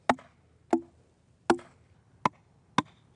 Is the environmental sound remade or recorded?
recorded